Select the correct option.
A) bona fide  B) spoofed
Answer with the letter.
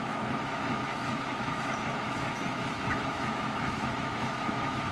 B